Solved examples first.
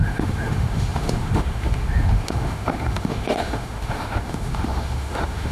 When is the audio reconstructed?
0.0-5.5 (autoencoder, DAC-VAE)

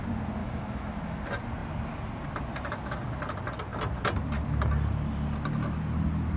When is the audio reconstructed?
0.4-1.2 (autoencoder, DAC-VAE)